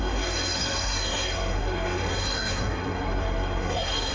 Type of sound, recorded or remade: remade